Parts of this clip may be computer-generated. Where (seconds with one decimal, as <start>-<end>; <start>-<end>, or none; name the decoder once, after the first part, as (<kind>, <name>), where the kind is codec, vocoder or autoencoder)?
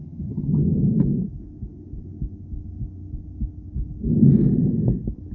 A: 0.0-0.8 (vocoder, HiFi-GAN)